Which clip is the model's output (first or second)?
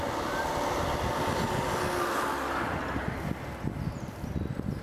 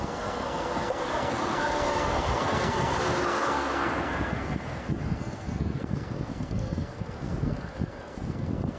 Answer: second